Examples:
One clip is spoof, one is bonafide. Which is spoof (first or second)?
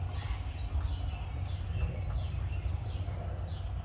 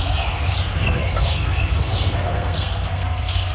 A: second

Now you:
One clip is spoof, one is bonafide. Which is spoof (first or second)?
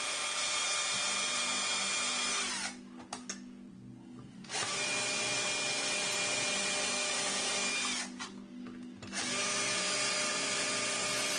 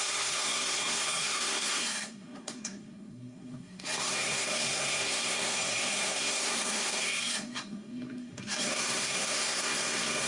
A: second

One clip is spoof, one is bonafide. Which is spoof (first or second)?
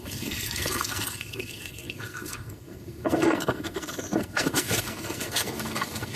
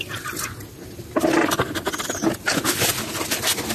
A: first